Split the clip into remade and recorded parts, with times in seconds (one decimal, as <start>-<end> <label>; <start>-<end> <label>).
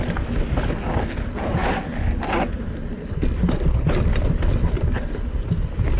0.0-6.0 recorded